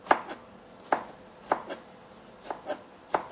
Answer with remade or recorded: recorded